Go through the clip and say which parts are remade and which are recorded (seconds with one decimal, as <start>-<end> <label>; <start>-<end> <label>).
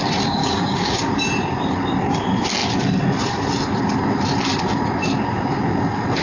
0.0-0.4 recorded; 0.4-1.0 remade; 1.0-6.2 recorded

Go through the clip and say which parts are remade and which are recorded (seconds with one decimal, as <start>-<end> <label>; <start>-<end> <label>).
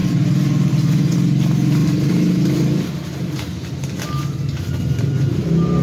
0.0-5.8 recorded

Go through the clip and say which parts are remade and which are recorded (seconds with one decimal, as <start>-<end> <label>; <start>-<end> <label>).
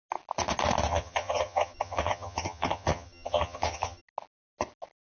0.0-0.9 recorded; 0.9-4.0 remade; 4.0-5.1 recorded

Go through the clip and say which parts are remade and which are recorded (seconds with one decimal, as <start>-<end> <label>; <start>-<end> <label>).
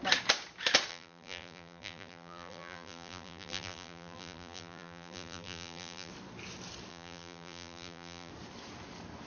0.0-0.9 recorded; 0.9-6.1 remade; 6.1-6.9 recorded; 6.9-8.3 remade; 8.3-9.3 recorded